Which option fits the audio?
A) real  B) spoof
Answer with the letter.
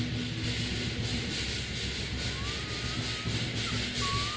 A